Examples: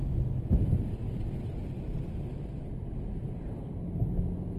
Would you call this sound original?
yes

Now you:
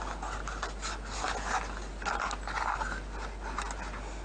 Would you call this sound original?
yes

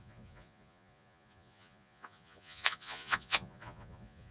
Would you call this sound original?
no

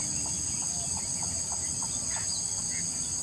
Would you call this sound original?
yes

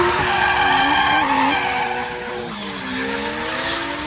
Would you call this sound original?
yes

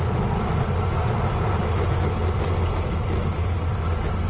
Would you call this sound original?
yes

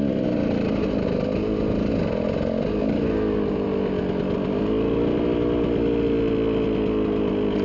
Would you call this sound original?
yes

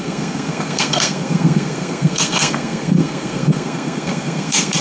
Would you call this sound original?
no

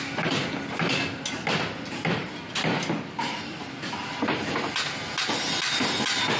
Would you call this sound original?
yes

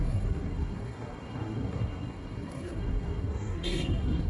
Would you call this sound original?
no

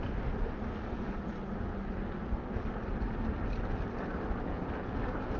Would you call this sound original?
yes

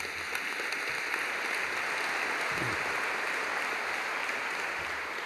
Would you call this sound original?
yes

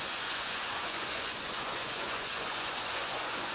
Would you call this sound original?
no